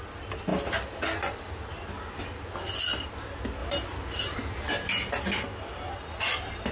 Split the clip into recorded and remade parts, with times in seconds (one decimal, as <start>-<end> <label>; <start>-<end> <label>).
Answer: 0.0-6.7 recorded